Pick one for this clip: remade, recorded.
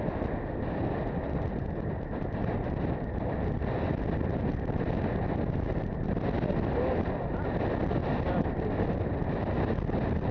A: recorded